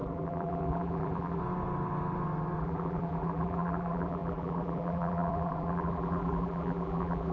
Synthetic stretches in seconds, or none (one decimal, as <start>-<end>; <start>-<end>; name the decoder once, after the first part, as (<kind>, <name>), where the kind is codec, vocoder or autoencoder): 0.0-1.4 (vocoder, BigVGAN v2); 2.6-7.3